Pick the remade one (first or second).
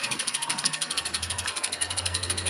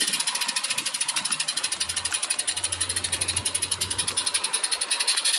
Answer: first